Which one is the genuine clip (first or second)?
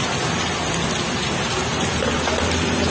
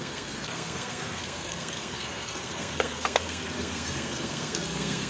first